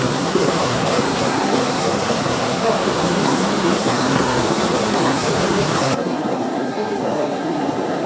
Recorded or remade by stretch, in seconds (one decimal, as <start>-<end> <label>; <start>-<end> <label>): 0.0-8.1 remade